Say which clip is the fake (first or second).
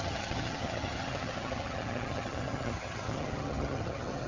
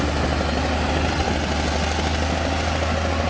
first